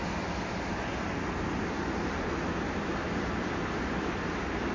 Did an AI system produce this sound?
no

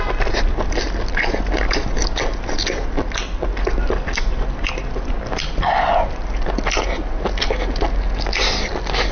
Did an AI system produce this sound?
no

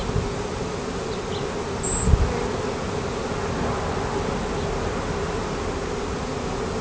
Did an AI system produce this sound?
no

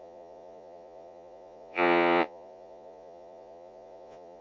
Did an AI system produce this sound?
yes